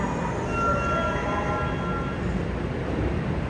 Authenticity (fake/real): real